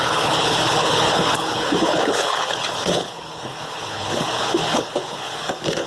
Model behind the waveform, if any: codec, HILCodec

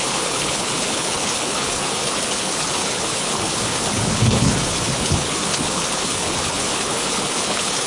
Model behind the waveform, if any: codec, HILCodec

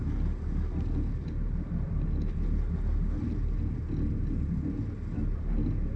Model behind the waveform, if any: none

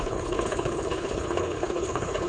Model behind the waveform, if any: codec, HILCodec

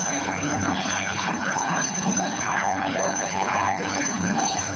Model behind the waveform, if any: codec, HILCodec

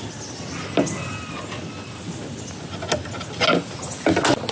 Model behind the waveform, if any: none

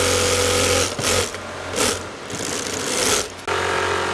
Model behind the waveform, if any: none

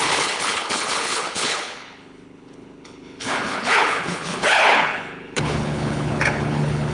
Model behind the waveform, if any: codec, HILCodec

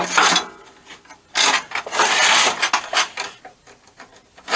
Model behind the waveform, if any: none